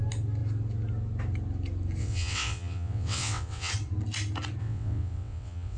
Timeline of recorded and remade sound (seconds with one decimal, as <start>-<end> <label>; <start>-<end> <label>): 0.0-2.0 recorded; 2.0-3.7 remade; 3.7-4.6 recorded; 4.6-5.8 remade